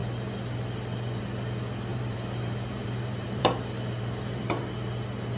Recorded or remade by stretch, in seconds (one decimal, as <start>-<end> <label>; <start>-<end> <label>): 0.0-1.9 recorded; 1.9-4.6 remade; 4.6-5.4 recorded

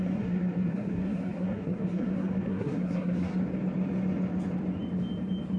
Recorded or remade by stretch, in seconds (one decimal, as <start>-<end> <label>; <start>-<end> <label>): 0.0-3.3 remade; 3.3-5.6 recorded

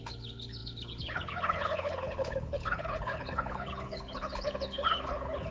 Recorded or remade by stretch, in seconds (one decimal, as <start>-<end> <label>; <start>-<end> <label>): 0.0-5.5 remade

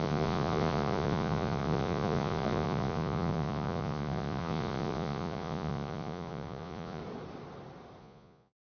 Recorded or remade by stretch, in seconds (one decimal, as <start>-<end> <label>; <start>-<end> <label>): 0.0-7.0 remade; 7.0-8.0 recorded; 8.0-8.7 remade

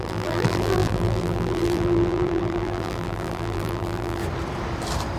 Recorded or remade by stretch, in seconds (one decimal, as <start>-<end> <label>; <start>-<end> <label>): 0.0-4.2 remade; 4.2-5.2 recorded

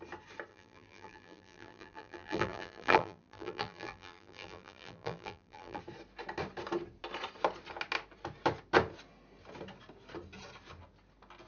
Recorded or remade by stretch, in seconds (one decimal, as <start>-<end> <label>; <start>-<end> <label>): 0.0-0.5 recorded; 0.5-5.8 remade; 5.8-11.5 recorded